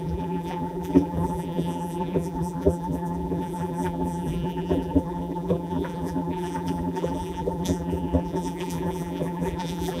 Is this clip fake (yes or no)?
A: yes